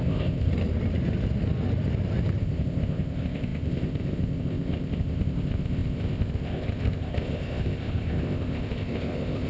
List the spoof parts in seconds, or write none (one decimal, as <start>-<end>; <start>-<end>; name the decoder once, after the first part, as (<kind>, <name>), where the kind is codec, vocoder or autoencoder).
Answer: 0.0-0.5 (codec, ZipCodec); 2.4-9.5

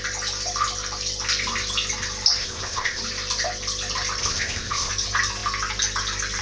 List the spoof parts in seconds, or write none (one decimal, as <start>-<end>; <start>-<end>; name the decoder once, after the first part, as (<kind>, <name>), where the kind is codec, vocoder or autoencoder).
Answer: 2.4-3.0 (codec, ZipCodec); 4.2-4.9

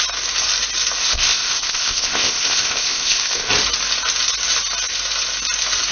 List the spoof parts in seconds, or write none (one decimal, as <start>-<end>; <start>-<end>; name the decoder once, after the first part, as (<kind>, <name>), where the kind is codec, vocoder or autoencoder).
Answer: 1.0-3.5 (codec, ZipCodec)

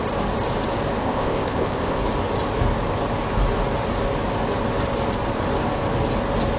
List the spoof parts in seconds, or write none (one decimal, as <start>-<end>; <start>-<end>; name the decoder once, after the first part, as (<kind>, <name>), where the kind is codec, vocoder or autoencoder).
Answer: 1.0-2.0 (codec, ZipCodec)